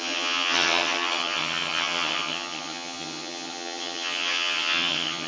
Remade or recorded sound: remade